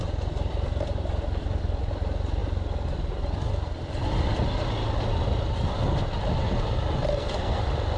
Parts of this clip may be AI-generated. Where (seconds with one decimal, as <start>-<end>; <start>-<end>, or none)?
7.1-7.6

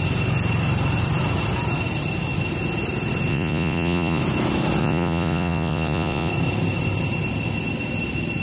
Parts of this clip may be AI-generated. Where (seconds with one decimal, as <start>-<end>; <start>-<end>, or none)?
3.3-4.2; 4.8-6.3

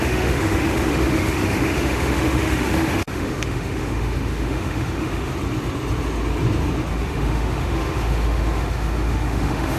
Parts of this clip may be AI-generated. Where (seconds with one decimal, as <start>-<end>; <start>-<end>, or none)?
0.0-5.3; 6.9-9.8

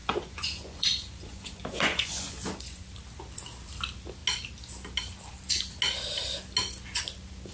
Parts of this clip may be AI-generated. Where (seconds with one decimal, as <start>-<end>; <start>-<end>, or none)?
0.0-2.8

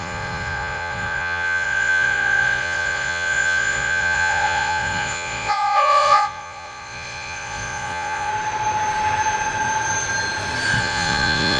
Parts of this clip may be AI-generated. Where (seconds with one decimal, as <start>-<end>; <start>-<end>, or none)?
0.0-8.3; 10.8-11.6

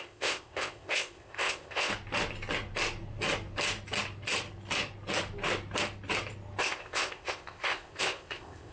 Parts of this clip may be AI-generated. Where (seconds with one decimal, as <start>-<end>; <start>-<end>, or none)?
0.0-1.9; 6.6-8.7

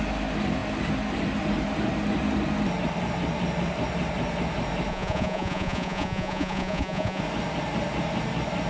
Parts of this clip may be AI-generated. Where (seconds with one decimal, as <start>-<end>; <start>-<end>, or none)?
4.9-7.2

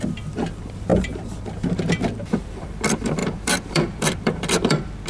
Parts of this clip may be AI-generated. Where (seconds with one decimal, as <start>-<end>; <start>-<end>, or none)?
0.0-5.1